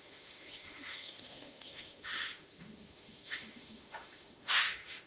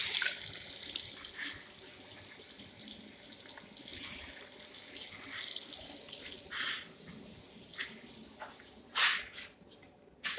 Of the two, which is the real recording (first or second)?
second